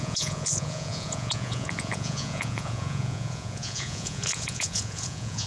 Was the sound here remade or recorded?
remade